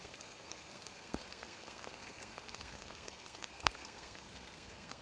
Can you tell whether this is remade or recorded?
remade